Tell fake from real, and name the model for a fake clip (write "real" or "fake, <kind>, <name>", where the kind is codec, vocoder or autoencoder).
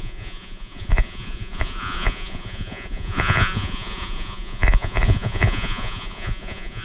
fake, vocoder, Vocos